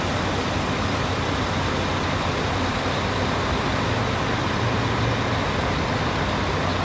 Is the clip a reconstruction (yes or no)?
no